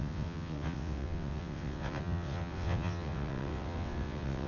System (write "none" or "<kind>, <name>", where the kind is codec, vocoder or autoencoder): vocoder, WaveNeXt